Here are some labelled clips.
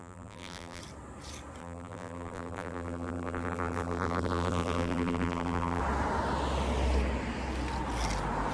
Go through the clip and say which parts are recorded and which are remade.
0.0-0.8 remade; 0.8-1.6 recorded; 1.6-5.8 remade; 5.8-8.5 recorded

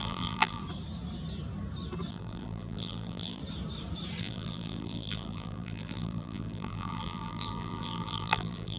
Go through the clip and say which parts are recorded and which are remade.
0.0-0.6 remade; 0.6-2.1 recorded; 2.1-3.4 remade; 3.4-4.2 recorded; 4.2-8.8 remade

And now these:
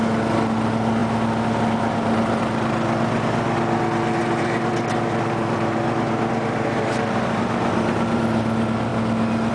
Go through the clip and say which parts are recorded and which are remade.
0.0-4.2 recorded; 4.2-8.2 remade; 8.2-9.5 recorded

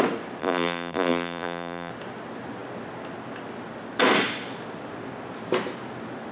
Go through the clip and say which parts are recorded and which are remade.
0.0-0.4 recorded; 0.4-1.9 remade; 1.9-6.3 recorded